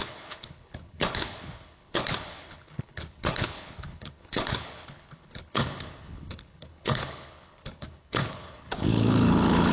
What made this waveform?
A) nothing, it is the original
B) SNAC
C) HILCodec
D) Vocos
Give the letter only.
C